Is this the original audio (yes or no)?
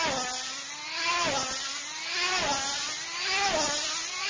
yes